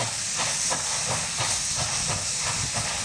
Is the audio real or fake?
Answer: real